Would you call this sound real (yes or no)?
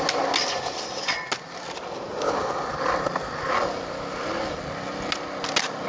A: yes